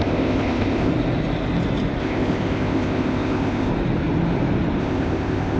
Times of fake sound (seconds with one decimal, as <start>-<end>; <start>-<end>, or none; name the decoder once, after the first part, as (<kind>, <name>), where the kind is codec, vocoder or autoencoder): 0.0-0.9 (codec, ZipCodec); 2.0-3.7; 4.8-5.6